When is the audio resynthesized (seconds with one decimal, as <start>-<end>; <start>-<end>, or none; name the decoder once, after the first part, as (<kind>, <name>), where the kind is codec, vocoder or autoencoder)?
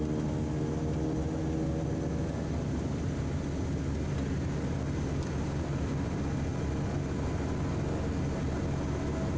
none